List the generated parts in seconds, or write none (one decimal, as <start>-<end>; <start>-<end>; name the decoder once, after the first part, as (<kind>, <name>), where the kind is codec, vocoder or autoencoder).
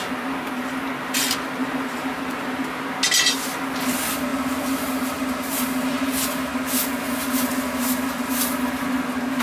1.6-2.8 (vocoder, BigVGAN v2); 4.3-5.9; 7.5-8.3